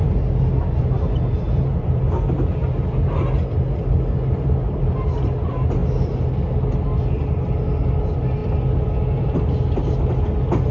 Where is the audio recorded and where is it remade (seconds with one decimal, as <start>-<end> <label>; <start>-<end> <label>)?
0.0-3.2 remade; 3.2-8.4 recorded; 8.4-9.3 remade; 9.3-10.7 recorded